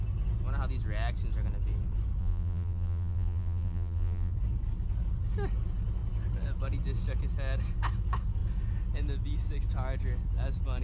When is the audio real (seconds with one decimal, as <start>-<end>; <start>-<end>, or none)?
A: 0.0-2.2; 4.3-10.8